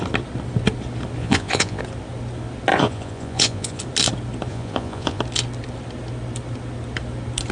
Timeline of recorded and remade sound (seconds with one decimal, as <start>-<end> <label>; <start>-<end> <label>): 0.0-1.2 recorded; 1.2-1.8 remade; 1.8-2.7 recorded; 2.7-3.8 remade; 3.8-4.5 recorded; 4.5-5.2 remade; 5.2-7.5 recorded